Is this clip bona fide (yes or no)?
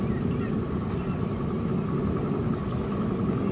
yes